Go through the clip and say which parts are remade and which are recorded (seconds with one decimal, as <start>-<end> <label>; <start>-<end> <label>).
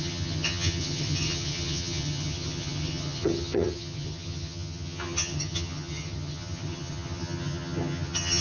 0.0-8.4 remade